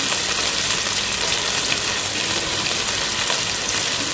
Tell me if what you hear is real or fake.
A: fake